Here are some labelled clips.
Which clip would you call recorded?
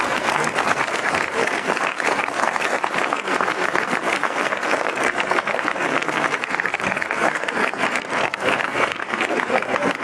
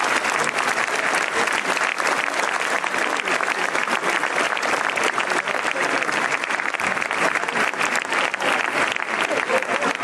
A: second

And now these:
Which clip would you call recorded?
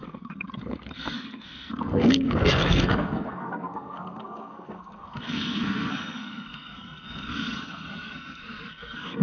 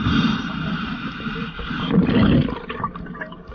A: second